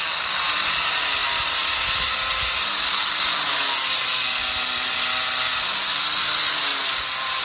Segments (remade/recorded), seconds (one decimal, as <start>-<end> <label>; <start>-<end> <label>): 0.0-1.2 recorded; 1.2-2.1 remade; 2.1-4.4 recorded; 4.4-4.9 remade; 4.9-6.7 recorded; 6.7-7.4 remade